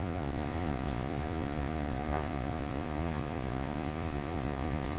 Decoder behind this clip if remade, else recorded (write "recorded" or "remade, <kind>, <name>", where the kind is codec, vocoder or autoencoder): remade, vocoder, Vocos